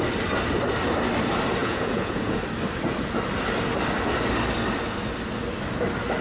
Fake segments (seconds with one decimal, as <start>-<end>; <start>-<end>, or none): 1.6-2.4